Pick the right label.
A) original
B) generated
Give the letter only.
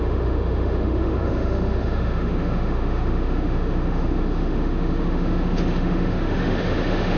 B